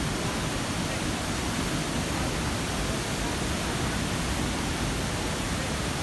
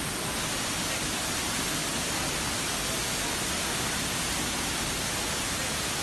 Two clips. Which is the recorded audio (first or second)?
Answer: second